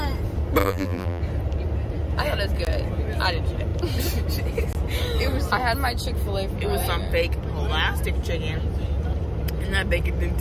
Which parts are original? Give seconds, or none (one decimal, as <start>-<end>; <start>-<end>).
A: 0.0-0.6; 1.2-10.4